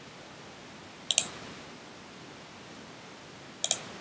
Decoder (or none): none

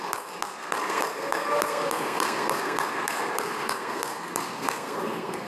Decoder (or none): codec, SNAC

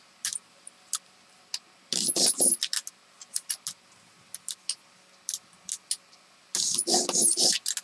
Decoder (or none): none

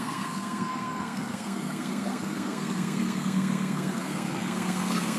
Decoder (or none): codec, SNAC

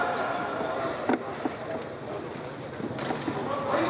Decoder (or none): none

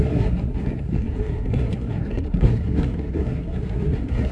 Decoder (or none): codec, SNAC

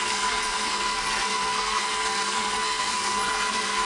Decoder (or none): codec, SNAC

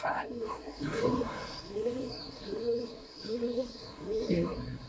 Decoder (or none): codec, SNAC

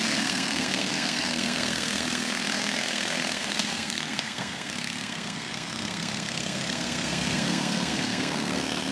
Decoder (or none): codec, SNAC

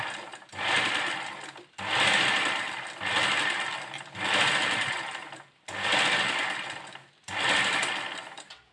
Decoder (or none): none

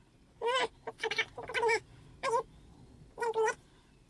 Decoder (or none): none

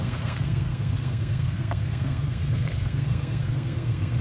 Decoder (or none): codec, SNAC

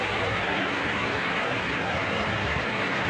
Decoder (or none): codec, SNAC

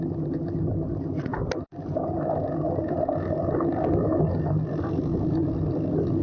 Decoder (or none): none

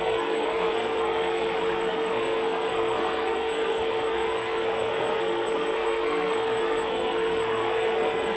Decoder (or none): codec, SNAC